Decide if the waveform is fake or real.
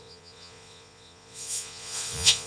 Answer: fake